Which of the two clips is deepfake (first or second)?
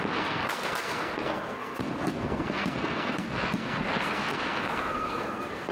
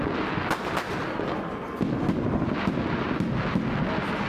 first